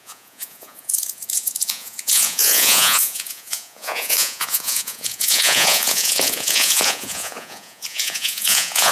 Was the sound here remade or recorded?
remade